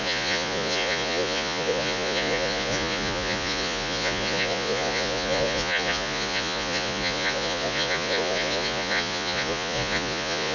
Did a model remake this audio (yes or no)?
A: yes